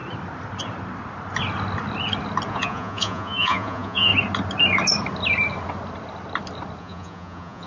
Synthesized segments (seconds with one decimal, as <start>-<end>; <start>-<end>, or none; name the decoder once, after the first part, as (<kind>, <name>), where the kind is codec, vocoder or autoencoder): 2.5-4.1 (vocoder, Vocos); 6.8-7.7